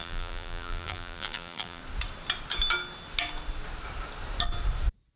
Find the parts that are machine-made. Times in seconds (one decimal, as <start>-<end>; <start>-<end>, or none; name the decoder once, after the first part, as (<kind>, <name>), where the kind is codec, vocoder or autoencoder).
0.0-1.8 (vocoder, BigVGAN v2)